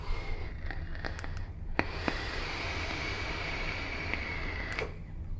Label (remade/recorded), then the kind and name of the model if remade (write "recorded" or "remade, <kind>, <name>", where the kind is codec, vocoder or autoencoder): recorded